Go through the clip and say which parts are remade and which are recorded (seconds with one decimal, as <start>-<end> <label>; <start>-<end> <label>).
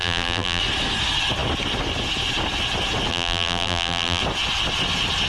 0.0-0.6 remade; 0.6-3.1 recorded; 3.1-4.2 remade; 4.2-5.3 recorded